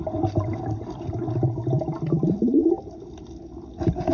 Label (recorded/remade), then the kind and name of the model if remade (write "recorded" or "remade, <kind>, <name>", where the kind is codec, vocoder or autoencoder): recorded